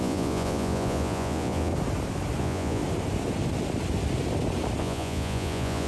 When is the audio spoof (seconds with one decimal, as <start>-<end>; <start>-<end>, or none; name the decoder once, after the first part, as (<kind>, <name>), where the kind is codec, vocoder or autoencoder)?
0.0-1.7 (vocoder, Vocos); 2.4-2.8; 4.8-5.9